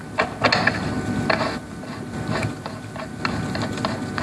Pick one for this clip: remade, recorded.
recorded